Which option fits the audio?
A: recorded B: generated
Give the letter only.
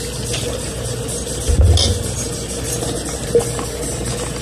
A